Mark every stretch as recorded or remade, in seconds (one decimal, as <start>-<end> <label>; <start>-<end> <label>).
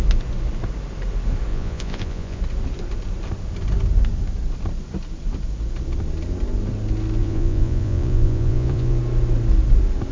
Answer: 0.0-1.5 recorded; 1.5-2.4 remade; 2.4-7.2 recorded; 7.2-9.0 remade; 9.0-10.1 recorded